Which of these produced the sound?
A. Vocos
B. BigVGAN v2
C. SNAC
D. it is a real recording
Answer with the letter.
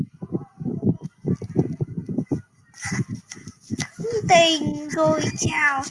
D